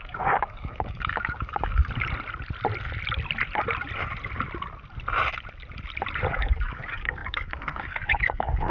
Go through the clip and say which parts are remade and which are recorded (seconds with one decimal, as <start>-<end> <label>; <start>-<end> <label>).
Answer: 0.0-1.8 remade; 1.8-6.3 recorded; 6.3-8.7 remade